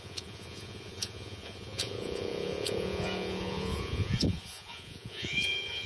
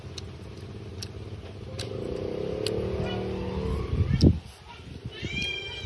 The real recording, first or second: second